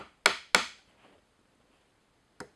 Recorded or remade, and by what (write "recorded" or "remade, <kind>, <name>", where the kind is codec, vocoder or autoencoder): recorded